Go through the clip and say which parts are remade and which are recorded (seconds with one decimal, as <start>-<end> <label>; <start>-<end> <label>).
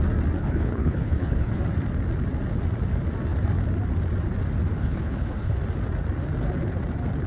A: 0.0-0.4 recorded; 0.4-1.6 remade; 1.6-4.8 recorded; 4.8-5.6 remade; 5.6-7.3 recorded